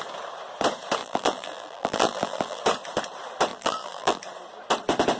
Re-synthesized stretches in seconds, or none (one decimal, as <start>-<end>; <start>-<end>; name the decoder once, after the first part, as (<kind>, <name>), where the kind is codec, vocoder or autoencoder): 1.0-2.6 (vocoder, BigVGAN v2); 3.5-4.2